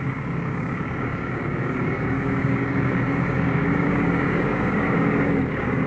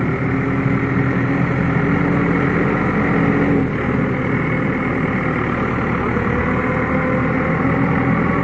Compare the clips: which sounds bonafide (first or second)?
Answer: second